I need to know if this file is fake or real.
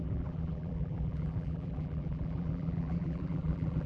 fake